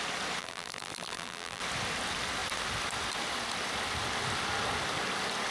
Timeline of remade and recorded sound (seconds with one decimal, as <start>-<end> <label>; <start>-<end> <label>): 0.0-0.4 recorded; 0.4-1.6 remade; 1.6-5.5 recorded